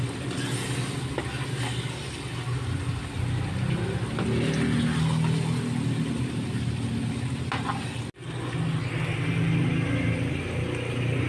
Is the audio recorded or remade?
recorded